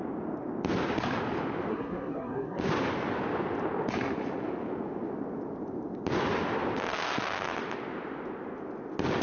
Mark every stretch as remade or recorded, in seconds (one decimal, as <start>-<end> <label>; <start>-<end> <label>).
0.0-1.7 recorded; 1.7-2.6 remade; 2.6-9.2 recorded